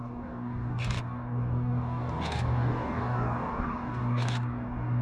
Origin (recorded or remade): remade